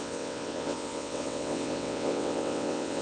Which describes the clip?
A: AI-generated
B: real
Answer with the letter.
A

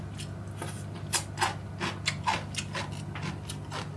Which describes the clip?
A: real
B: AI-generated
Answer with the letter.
A